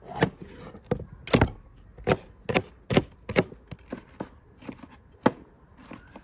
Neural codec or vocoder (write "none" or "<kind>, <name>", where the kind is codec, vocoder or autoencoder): none